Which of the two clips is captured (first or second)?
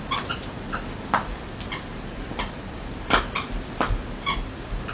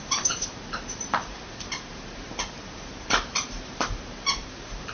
first